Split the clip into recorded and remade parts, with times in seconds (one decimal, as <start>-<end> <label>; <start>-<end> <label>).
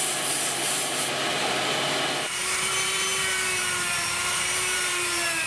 0.0-5.5 remade